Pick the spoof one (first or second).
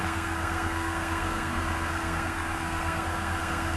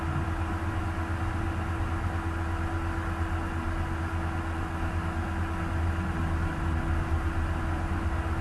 first